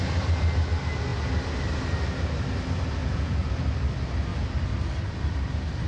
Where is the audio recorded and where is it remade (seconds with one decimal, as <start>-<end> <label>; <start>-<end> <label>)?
0.0-3.0 recorded; 3.0-3.5 remade; 3.5-5.9 recorded

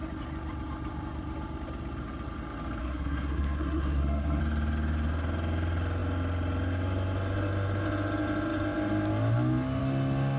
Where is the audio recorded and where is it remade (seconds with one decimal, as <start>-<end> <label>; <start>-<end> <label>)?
0.0-2.8 recorded; 2.8-4.4 remade; 4.4-10.4 recorded

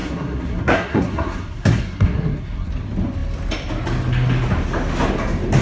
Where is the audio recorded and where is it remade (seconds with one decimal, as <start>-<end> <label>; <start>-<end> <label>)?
0.0-2.7 remade; 2.7-5.6 recorded

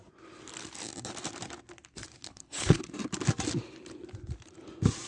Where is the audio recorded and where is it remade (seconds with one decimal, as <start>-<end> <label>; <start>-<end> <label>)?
0.0-2.3 recorded; 2.3-2.8 remade; 2.8-5.1 recorded

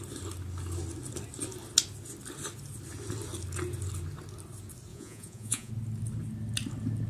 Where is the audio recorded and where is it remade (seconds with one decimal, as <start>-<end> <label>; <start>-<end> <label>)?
0.0-4.9 recorded; 4.9-5.7 remade; 5.7-7.1 recorded